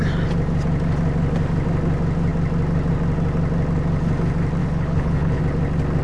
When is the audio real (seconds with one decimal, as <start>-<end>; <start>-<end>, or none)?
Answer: 0.0-4.6; 5.4-6.0